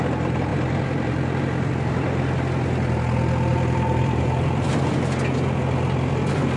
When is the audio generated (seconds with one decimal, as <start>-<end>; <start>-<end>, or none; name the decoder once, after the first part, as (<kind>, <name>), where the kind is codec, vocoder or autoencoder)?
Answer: 0.5-1.7 (vocoder, BigVGAN v2); 3.5-4.7